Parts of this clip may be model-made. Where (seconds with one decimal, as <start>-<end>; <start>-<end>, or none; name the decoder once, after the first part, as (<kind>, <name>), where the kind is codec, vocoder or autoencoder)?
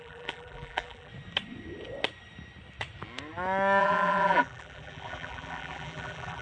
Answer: 0.0-1.1 (vocoder, BigVGAN v2); 3.8-6.4